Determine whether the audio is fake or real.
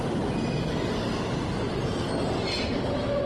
real